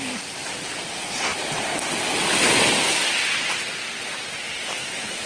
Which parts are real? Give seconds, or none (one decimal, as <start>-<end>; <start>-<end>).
0.0-5.3